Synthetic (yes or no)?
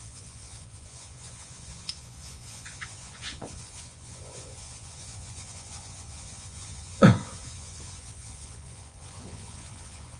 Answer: yes